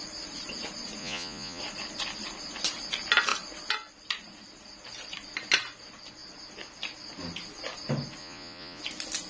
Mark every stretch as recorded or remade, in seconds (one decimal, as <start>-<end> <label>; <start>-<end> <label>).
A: 0.0-1.0 recorded; 1.0-1.6 remade; 1.6-8.2 recorded; 8.2-8.8 remade; 8.8-9.3 recorded